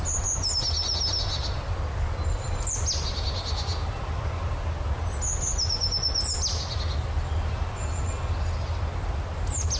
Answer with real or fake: real